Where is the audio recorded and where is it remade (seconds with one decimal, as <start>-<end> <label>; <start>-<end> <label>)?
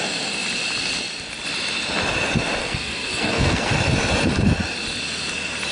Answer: 0.0-2.6 recorded; 2.6-3.7 remade; 3.7-5.7 recorded